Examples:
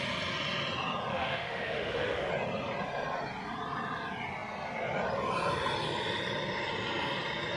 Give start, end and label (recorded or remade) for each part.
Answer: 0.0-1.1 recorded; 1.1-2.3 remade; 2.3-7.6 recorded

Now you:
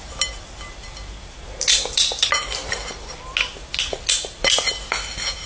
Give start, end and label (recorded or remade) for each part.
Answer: 0.0-5.5 recorded

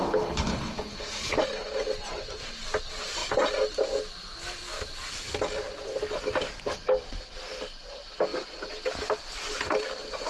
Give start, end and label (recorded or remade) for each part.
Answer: 0.0-1.4 remade; 1.4-10.3 recorded

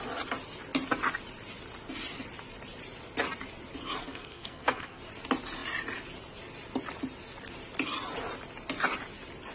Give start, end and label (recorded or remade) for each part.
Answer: 0.0-4.0 recorded; 4.0-5.0 remade; 5.0-9.5 recorded